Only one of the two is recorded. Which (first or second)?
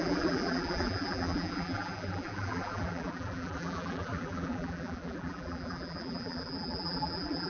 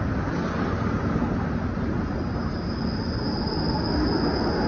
second